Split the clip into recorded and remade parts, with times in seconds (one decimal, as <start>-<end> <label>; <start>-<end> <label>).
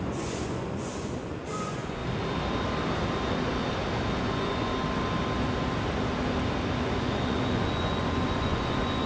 0.0-2.0 remade; 2.0-4.2 recorded; 4.2-4.7 remade; 4.7-6.8 recorded; 6.8-9.1 remade